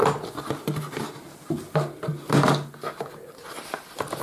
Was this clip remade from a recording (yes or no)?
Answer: no